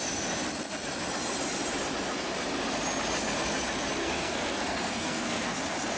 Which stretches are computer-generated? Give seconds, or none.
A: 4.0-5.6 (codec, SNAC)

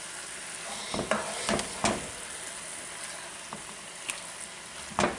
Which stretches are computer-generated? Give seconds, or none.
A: none

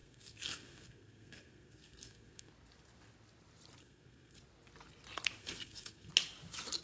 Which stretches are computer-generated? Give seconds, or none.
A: 0.0-2.5 (codec, SNAC); 3.8-4.4; 5.4-6.1

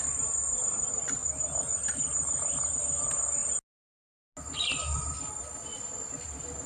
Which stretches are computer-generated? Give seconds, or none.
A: none

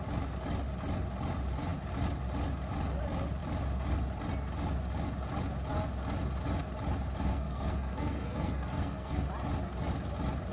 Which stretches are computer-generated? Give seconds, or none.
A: 7.3-9.2 (codec, SNAC)